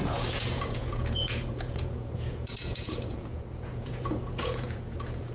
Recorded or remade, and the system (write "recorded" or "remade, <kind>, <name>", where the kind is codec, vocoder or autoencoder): remade, vocoder, Vocos